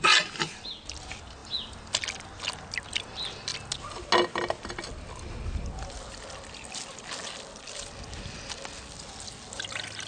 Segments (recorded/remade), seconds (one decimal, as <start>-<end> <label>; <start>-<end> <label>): 0.0-10.1 recorded

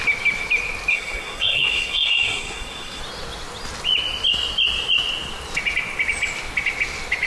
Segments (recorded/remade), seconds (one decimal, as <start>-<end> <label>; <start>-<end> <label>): 0.0-0.9 recorded; 0.9-3.0 remade; 3.0-7.3 recorded

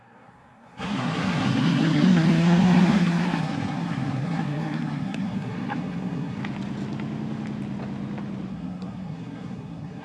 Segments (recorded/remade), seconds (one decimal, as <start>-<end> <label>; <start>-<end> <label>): 0.0-6.4 remade; 6.4-8.5 recorded; 8.5-10.0 remade